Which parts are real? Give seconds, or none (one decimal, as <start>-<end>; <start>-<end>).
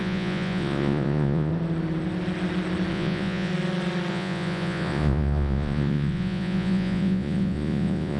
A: 1.5-2.9; 3.5-4.1